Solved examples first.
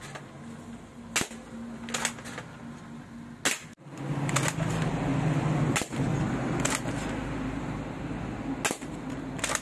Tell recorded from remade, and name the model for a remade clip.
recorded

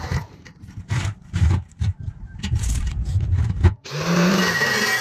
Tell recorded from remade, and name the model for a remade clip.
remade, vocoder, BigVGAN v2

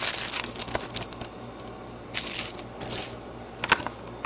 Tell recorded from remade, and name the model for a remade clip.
recorded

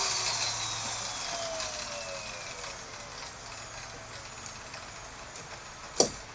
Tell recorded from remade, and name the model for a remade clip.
recorded